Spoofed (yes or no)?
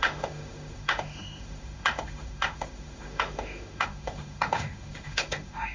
yes